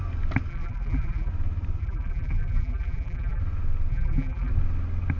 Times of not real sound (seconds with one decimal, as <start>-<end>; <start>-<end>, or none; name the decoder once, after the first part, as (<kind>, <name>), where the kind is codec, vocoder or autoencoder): 0.5-1.3 (vocoder, BigVGAN v2); 1.8-3.4; 3.9-4.5